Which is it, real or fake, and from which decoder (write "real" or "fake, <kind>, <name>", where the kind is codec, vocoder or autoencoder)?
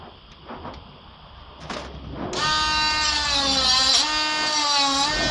real